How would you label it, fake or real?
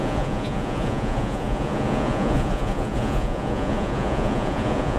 fake